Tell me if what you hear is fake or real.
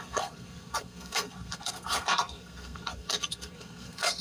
fake